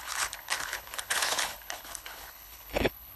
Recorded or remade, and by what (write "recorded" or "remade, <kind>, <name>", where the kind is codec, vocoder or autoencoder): remade, codec, HILCodec